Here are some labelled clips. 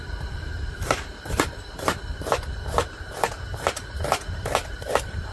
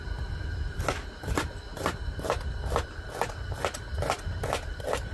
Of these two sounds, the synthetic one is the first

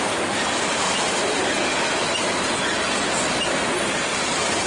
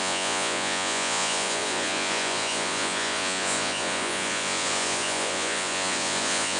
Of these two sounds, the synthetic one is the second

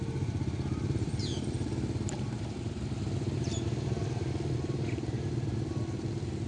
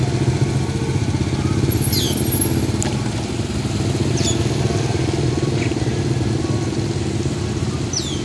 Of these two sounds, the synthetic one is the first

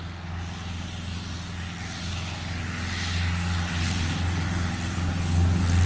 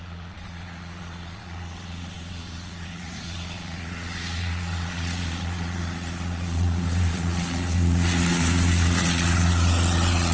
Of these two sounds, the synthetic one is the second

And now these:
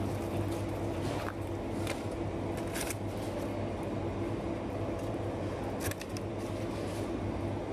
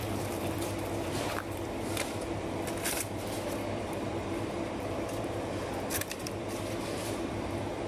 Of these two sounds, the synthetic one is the second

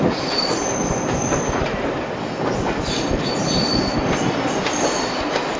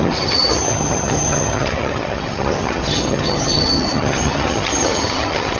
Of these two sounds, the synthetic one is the second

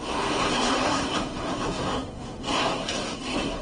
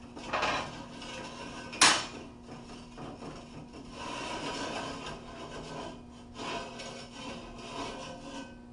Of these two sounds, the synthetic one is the first